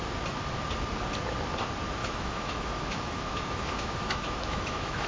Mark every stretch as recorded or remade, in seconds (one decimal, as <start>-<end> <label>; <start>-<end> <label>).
0.0-2.0 recorded; 2.0-5.1 remade